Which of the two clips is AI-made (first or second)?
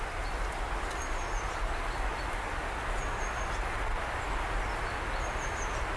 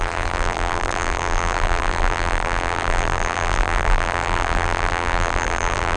second